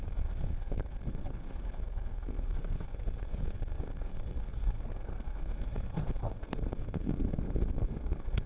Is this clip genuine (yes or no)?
no